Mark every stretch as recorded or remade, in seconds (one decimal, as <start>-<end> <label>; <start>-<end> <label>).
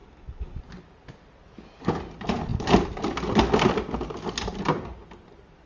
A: 0.0-0.6 remade; 0.6-5.7 recorded